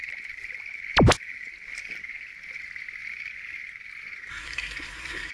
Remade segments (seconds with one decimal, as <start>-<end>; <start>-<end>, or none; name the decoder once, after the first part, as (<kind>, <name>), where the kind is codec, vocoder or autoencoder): 4.3-5.3 (codec, SNAC)